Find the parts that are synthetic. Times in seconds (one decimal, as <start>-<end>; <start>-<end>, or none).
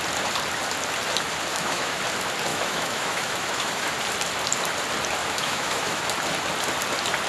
1.5-2.0; 2.5-3.9; 5.2-6.0